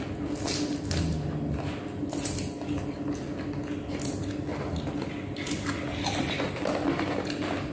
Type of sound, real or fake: real